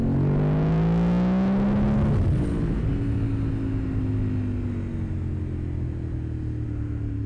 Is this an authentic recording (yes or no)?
yes